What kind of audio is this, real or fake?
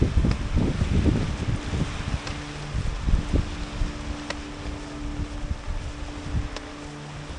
real